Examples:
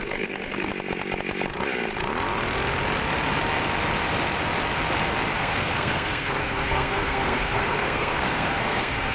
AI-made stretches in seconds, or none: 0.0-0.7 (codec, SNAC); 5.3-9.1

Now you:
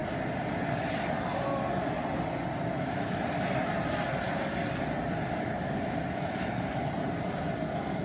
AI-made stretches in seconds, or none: none

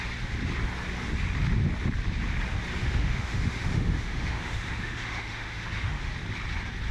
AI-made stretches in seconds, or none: 2.8-6.1 (autoencoder, DAC-VAE)

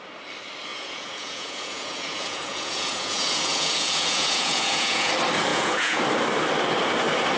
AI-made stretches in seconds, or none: 0.7-5.1 (vocoder, Vocos); 5.5-6.0

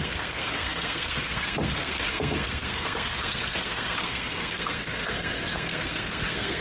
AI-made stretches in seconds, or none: 0.0-6.6 (codec, SNAC)